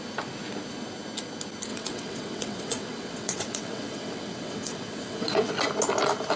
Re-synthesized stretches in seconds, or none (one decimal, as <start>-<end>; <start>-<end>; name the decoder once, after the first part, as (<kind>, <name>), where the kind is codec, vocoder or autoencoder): 1.7-5.5 (vocoder, WaveNeXt)